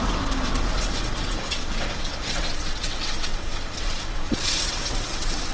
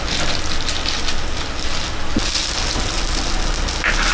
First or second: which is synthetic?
first